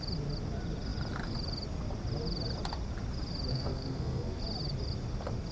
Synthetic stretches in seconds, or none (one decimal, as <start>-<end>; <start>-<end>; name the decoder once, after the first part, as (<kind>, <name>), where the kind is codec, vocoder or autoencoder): 3.5-4.4 (codec, SNAC)